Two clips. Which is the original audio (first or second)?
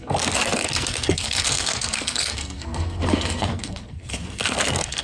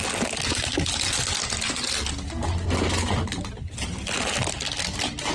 second